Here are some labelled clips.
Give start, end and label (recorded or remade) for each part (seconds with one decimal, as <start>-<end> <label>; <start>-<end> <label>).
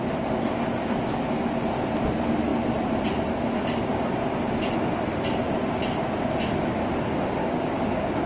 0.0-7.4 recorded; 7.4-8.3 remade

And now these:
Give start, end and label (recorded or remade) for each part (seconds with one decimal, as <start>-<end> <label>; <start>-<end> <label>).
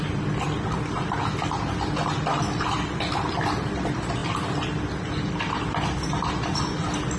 0.0-2.3 recorded; 2.3-3.0 remade; 3.0-7.2 recorded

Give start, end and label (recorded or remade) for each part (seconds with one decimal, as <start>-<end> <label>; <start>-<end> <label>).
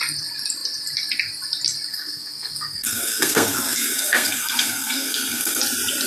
0.0-1.9 recorded; 1.9-5.6 remade; 5.6-6.1 recorded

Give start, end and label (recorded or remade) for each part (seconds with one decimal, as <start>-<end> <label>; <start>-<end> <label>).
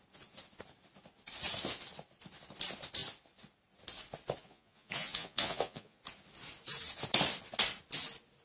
0.0-4.4 recorded; 4.4-6.0 remade; 6.0-8.4 recorded